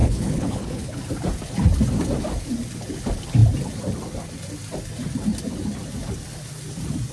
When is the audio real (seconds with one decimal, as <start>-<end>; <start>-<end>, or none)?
1.0-7.1